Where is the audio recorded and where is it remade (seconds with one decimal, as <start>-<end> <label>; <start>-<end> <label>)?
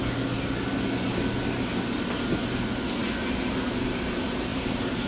0.0-4.5 recorded; 4.5-5.1 remade